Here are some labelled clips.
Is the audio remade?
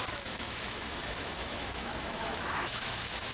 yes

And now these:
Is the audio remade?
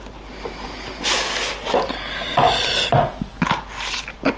no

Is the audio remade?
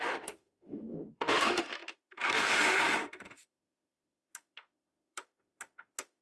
yes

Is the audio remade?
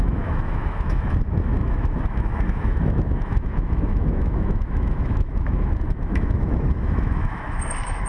yes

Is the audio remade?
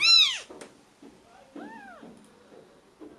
no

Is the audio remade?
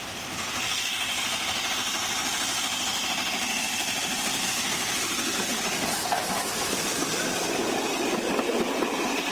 no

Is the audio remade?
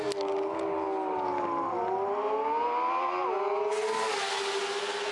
no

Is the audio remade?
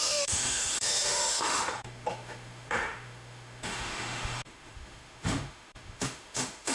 yes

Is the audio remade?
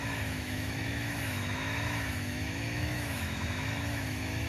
yes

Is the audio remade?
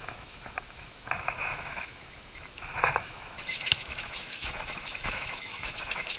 yes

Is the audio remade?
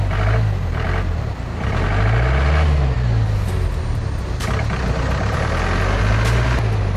no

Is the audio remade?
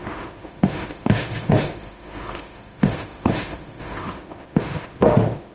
yes